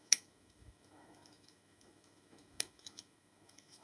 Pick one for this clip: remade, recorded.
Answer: remade